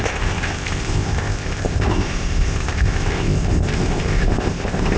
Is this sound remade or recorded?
remade